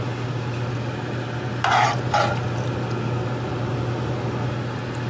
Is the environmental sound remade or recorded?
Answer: recorded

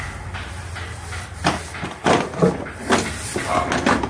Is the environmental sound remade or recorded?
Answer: recorded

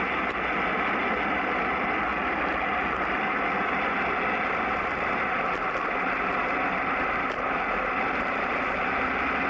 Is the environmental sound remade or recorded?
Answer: recorded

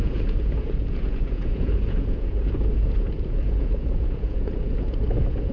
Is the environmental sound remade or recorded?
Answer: remade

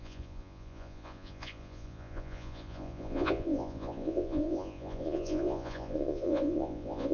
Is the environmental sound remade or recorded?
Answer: remade